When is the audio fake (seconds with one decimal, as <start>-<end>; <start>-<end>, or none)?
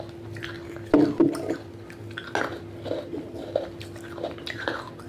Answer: none